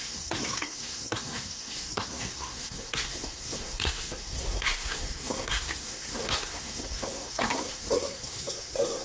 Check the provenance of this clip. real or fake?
fake